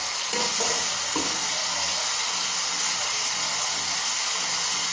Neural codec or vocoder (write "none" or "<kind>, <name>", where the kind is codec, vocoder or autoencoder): none